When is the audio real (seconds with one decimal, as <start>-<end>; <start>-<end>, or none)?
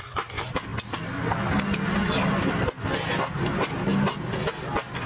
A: 0.0-5.1